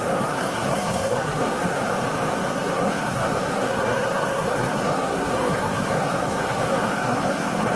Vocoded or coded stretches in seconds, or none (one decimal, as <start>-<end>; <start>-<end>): 0.0-1.9; 2.4-7.8